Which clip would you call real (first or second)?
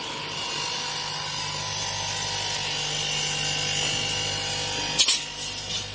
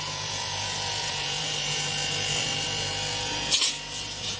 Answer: first